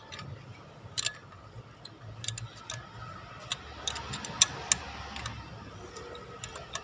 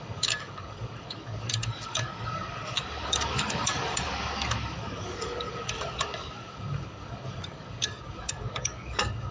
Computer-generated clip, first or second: second